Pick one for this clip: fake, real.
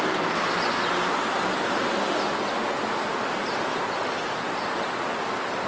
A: real